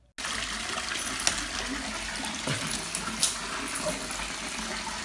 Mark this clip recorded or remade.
recorded